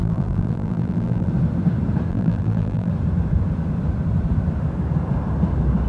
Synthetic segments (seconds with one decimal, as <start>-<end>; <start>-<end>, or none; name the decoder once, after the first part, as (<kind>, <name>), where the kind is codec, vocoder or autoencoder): 0.0-1.3 (vocoder, BigVGAN v2); 2.1-2.9